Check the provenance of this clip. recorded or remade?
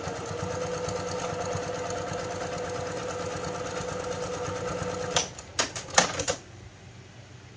recorded